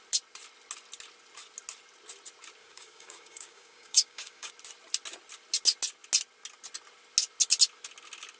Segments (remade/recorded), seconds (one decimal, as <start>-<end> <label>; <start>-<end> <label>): 0.0-2.6 recorded; 2.6-4.5 remade; 4.5-8.4 recorded